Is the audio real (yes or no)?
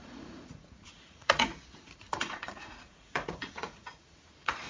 no